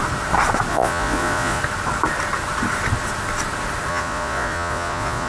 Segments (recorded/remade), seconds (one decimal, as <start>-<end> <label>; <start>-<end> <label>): 0.0-0.7 recorded; 0.7-1.6 remade; 1.6-3.9 recorded; 3.9-5.3 remade